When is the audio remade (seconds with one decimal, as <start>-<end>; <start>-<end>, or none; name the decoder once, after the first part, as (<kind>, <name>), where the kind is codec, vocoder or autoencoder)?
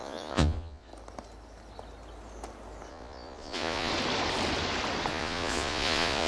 0.0-0.9 (vocoder, Vocos); 2.9-3.9; 5.1-6.3